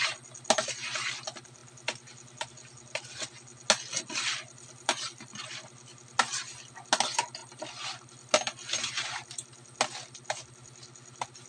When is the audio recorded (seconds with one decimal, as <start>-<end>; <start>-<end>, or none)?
0.0-11.5